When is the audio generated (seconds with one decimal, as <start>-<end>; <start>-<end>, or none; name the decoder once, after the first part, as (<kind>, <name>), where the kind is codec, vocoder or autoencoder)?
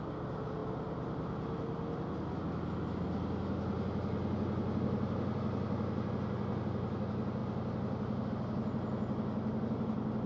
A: none